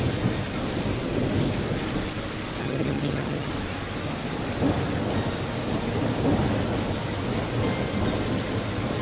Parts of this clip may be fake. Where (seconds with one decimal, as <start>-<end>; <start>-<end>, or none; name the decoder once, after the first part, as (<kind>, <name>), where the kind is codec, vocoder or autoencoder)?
2.6-3.5 (vocoder, HiFi-GAN)